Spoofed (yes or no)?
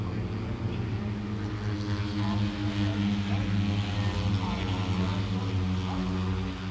no